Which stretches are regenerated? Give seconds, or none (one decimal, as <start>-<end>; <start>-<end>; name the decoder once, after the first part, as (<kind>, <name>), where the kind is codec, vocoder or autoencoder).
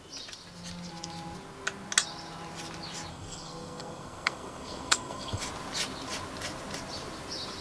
3.1-5.4 (codec, SNAC)